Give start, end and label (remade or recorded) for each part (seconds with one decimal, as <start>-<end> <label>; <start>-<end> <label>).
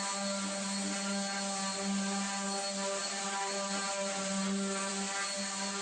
0.0-5.8 recorded